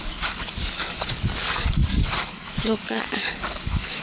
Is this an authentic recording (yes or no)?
no